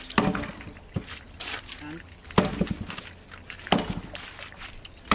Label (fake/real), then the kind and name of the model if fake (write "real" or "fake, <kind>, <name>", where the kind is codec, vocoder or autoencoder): real